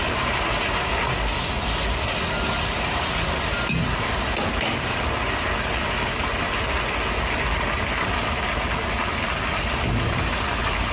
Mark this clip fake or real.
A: real